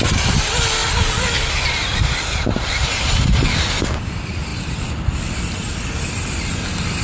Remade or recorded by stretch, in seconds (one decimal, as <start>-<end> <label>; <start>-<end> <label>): 0.0-7.0 recorded